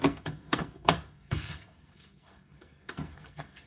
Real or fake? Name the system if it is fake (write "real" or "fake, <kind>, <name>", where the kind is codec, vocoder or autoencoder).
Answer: fake, codec, SNAC